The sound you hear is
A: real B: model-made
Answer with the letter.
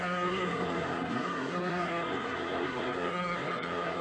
B